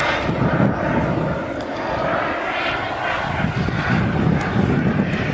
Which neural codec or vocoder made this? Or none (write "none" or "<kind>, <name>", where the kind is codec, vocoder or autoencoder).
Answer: none